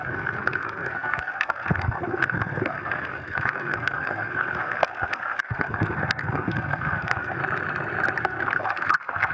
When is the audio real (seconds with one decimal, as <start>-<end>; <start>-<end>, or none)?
7.4-8.2